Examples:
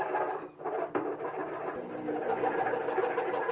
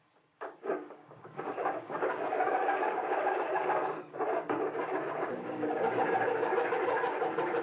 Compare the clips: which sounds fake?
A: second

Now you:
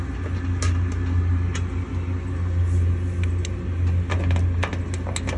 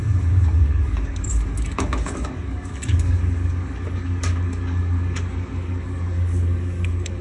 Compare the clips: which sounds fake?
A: second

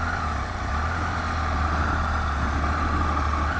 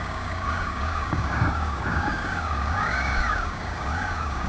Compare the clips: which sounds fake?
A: second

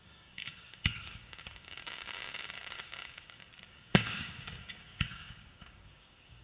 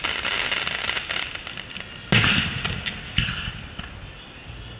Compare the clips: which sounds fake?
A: first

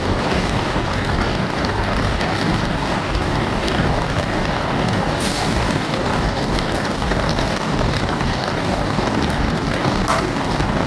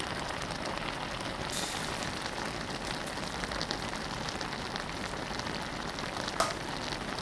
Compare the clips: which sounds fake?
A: first